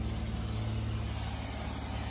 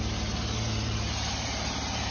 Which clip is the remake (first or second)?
second